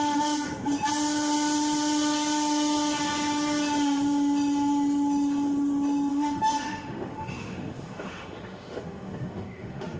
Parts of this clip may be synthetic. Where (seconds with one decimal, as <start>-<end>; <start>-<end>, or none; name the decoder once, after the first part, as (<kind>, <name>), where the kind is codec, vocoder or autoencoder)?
6.1-10.0 (autoencoder, DAC-VAE)